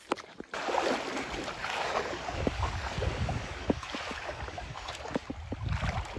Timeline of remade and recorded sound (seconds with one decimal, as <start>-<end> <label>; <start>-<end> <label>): 0.0-1.6 recorded; 1.6-5.3 remade; 5.3-6.2 recorded